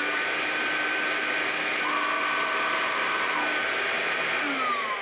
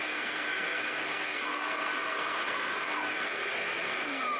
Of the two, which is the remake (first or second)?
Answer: second